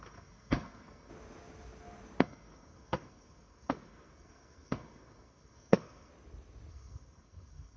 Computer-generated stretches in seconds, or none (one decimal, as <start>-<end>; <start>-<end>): 0.0-1.1; 2.2-6.1; 6.7-7.8

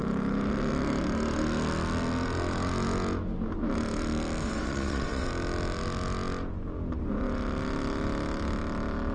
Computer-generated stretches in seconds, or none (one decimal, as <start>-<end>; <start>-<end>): 4.4-5.3

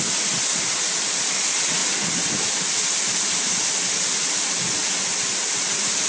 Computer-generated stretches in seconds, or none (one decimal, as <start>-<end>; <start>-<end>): none